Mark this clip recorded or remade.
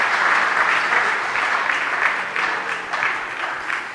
remade